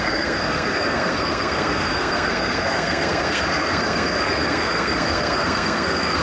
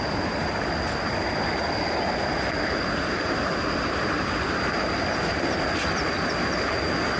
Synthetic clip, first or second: first